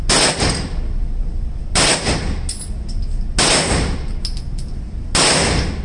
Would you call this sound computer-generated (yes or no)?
no